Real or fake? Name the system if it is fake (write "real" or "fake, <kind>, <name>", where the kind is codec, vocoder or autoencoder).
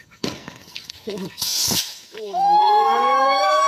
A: fake, codec, SNAC